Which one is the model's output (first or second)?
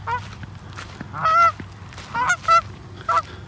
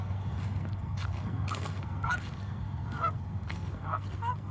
second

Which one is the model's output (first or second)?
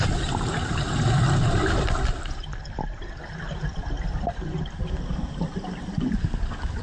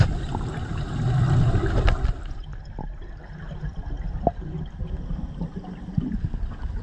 first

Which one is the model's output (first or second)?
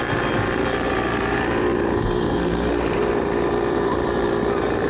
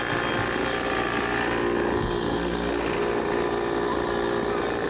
first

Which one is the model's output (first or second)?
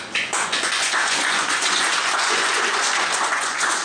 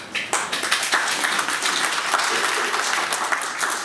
first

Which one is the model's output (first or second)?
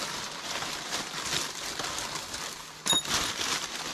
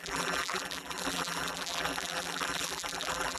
second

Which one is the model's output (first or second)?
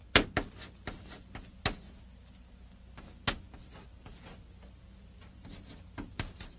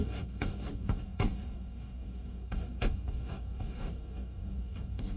second